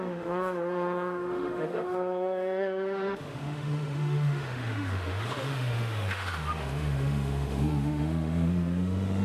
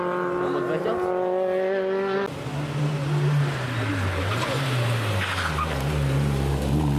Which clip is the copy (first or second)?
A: first